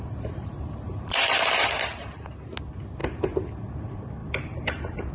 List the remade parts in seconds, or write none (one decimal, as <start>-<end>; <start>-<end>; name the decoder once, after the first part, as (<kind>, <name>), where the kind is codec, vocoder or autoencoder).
0.0-2.5 (vocoder, BigVGAN v2); 4.2-5.1